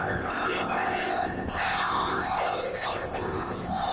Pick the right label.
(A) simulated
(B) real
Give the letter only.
A